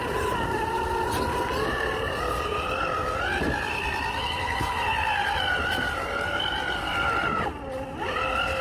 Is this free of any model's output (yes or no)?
yes